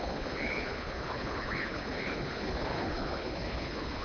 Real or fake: fake